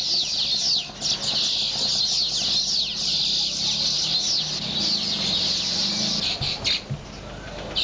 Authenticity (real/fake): real